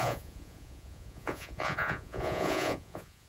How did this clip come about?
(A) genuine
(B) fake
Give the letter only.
B